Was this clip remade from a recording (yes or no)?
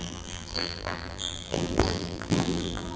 yes